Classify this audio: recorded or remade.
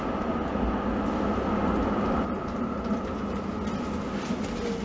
recorded